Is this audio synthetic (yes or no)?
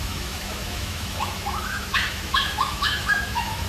yes